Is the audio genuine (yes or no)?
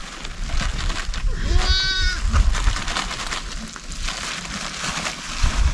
yes